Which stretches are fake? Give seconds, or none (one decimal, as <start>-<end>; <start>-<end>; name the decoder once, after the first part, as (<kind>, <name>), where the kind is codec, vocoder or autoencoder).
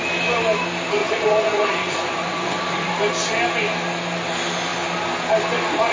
1.0-2.9 (vocoder, Vocos)